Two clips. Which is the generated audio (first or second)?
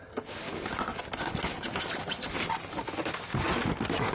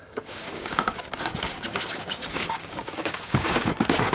second